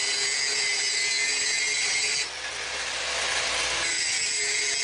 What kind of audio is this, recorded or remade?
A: recorded